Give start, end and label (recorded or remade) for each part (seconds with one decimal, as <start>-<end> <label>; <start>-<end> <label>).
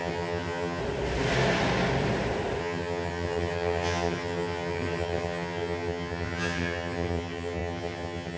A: 0.0-0.8 remade; 0.8-2.6 recorded; 2.6-8.4 remade